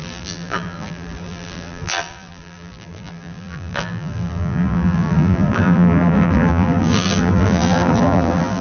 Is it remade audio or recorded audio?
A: remade